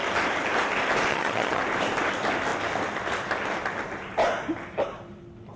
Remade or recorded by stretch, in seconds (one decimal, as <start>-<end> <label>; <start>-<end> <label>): 0.0-1.1 recorded; 1.1-1.6 remade; 1.6-5.6 recorded